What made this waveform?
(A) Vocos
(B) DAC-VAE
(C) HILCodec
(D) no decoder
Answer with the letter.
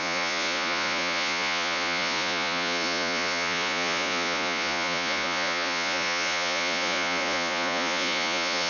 A